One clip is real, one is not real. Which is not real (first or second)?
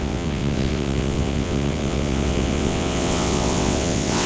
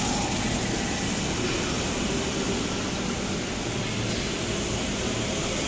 first